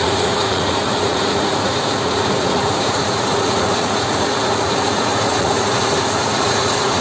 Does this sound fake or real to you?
fake